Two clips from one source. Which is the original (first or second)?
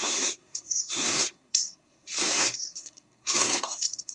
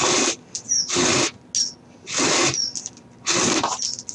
second